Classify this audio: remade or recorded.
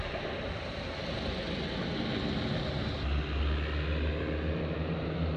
recorded